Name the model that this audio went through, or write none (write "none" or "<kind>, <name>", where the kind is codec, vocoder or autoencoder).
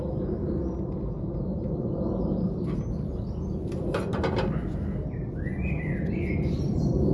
none